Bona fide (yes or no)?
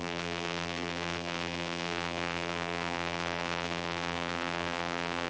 no